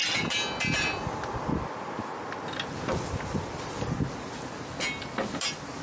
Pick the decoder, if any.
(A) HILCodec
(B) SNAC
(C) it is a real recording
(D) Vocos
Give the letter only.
C